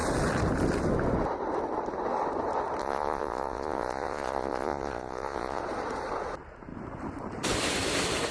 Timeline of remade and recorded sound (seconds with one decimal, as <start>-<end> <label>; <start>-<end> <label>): 0.0-2.8 recorded; 2.8-5.6 remade; 5.6-8.3 recorded